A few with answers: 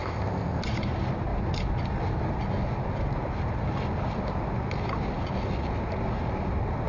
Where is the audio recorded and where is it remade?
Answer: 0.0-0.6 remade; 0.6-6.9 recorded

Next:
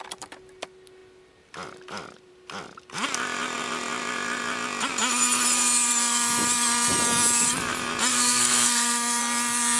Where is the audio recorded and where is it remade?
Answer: 0.0-8.1 recorded; 8.1-9.2 remade; 9.2-9.8 recorded

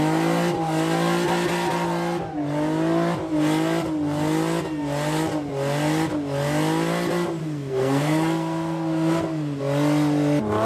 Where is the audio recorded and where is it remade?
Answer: 0.0-7.4 recorded; 7.4-9.6 remade; 9.6-10.7 recorded

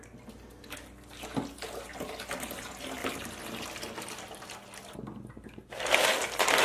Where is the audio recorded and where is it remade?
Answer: 0.0-6.6 recorded

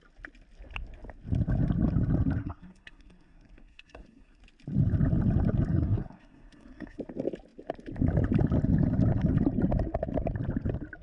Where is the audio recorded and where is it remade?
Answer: 0.0-2.4 recorded; 2.4-4.4 remade; 4.4-5.7 recorded; 5.7-7.0 remade; 7.0-11.0 recorded

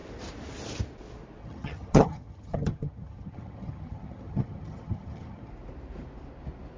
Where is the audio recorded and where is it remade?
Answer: 0.0-1.4 recorded; 1.4-5.5 remade; 5.5-6.8 recorded